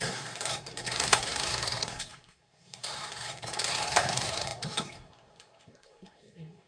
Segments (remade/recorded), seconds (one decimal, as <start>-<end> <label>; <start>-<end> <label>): 0.0-6.7 remade